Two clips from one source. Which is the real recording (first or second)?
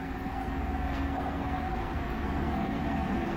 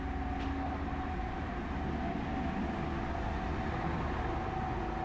second